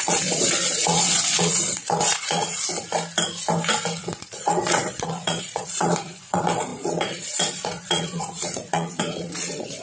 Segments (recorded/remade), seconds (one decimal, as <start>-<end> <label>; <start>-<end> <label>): 0.0-2.6 remade; 2.6-4.0 recorded; 4.0-9.8 remade